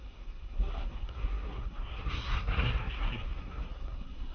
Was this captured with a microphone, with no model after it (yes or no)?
no